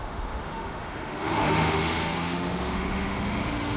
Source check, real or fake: fake